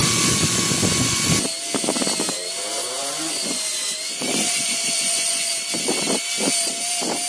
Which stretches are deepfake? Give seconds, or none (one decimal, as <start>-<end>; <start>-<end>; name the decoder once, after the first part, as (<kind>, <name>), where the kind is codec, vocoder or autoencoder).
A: 0.0-1.3 (vocoder, Vocos); 3.0-5.5